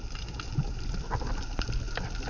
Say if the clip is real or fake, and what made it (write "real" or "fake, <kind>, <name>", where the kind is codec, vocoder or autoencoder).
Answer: real